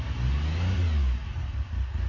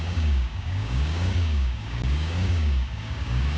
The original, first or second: first